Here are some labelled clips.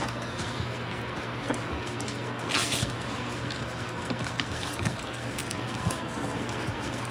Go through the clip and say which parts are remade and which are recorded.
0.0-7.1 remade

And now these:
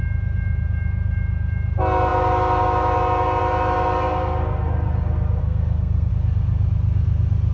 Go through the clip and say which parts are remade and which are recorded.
0.0-5.4 recorded; 5.4-6.1 remade; 6.1-7.5 recorded

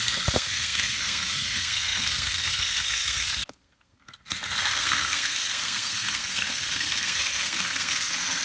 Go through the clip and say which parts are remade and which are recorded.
0.0-8.4 remade

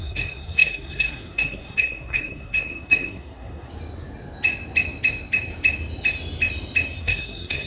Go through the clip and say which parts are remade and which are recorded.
0.0-3.7 remade; 3.7-7.0 recorded; 7.0-7.7 remade